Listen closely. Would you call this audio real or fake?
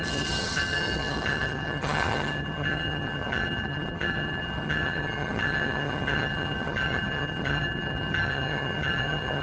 fake